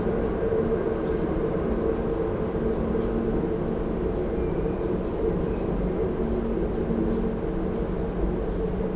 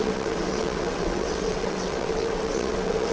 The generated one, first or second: second